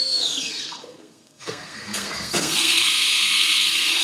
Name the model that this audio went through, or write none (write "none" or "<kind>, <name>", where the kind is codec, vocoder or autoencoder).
codec, SNAC